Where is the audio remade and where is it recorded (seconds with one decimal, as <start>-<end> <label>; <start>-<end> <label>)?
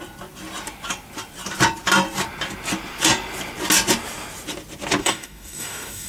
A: 0.0-5.0 recorded; 5.0-6.1 remade